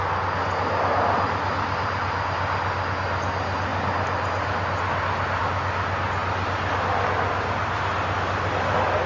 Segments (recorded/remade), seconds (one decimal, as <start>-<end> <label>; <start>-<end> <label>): 0.0-9.1 recorded